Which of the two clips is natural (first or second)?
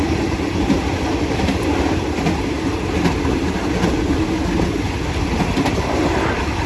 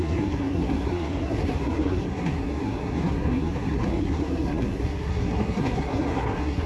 first